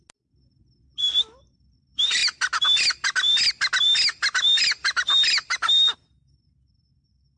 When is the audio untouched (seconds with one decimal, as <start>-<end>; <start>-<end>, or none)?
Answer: 0.0-7.4